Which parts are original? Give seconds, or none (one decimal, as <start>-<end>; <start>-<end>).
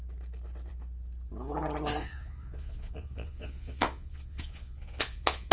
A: 0.0-2.0